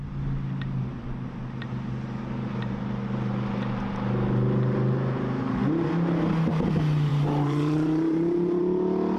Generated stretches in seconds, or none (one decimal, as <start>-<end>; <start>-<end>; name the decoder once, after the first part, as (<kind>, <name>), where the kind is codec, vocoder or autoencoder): 7.1-8.6 (vocoder, BigVGAN v2)